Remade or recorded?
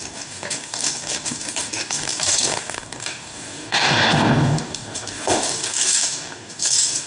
remade